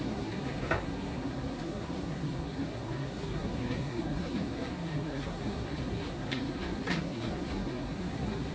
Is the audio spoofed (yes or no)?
yes